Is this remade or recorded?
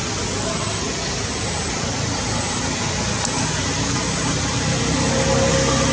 recorded